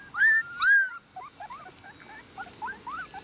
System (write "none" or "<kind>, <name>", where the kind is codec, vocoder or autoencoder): none